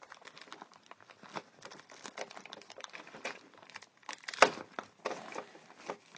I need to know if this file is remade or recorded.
recorded